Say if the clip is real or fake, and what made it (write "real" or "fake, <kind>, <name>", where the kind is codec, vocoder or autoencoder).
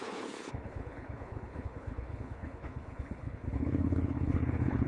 fake, codec, HILCodec